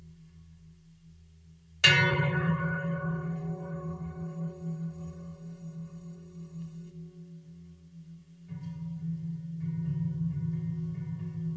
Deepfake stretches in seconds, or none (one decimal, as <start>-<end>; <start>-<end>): 2.1-6.9